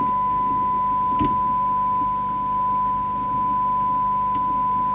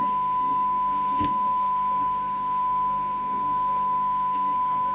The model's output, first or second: second